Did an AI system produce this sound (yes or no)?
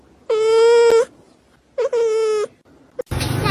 no